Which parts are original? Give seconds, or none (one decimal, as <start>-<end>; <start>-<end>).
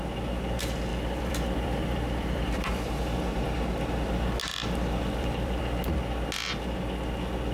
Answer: 0.0-0.9; 3.2-4.4; 5.6-7.5